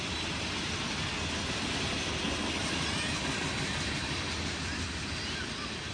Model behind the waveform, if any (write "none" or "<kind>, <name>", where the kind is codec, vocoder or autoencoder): none